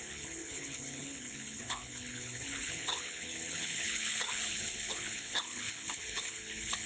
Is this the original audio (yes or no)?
no